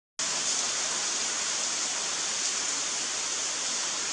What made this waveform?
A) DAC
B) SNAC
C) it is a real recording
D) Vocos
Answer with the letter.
C